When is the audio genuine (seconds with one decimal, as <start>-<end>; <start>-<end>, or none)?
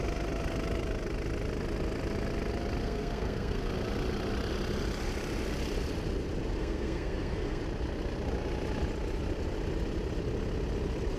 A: 0.0-2.8; 3.7-6.6; 7.6-11.2